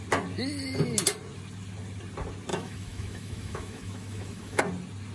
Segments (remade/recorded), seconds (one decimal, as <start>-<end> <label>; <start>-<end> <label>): 0.0-2.5 recorded; 2.5-4.6 remade; 4.6-5.1 recorded